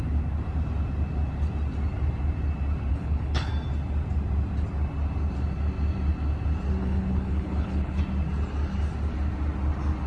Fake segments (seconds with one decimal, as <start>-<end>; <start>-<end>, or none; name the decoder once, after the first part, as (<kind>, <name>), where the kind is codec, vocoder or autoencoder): 2.9-3.5 (codec, HILCodec); 6.8-8.0